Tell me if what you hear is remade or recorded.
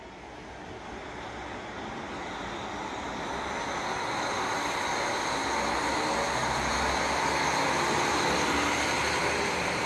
recorded